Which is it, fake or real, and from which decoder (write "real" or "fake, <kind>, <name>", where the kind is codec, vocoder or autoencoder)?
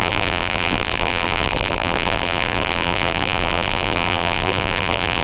fake, vocoder, BigVGAN v2